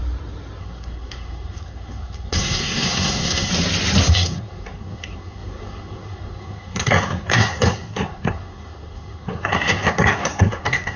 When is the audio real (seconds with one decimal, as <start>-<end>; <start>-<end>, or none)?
0.0-0.6; 3.5-4.1